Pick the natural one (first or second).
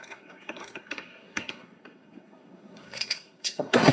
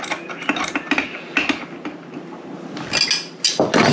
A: second